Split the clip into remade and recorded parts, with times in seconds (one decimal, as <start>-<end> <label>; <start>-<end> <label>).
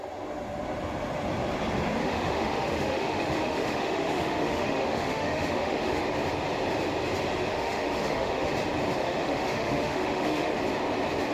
0.0-2.0 recorded; 2.0-6.0 remade; 6.0-7.5 recorded; 7.5-8.5 remade; 8.5-9.0 recorded; 9.0-10.6 remade; 10.6-11.3 recorded